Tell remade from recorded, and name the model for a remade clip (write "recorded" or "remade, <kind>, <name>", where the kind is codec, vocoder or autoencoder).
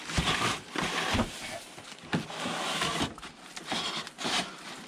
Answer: recorded